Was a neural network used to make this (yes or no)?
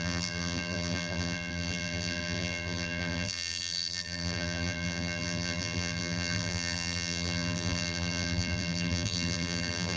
yes